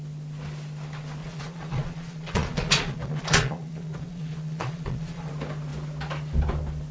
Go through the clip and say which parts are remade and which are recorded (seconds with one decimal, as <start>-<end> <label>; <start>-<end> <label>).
0.0-1.2 recorded; 1.2-5.3 remade; 5.3-6.9 recorded